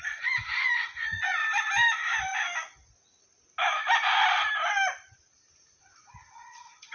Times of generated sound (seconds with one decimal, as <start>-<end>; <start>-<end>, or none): 0.0-1.4; 5.5-6.9